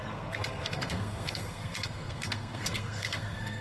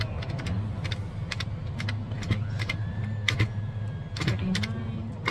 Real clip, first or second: second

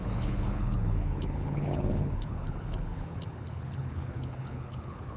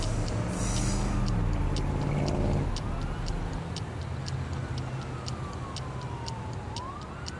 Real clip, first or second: second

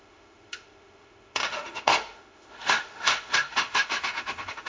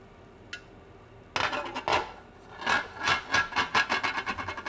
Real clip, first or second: second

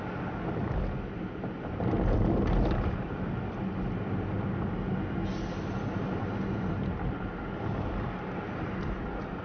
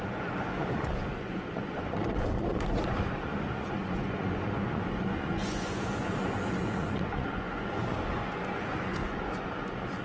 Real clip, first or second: first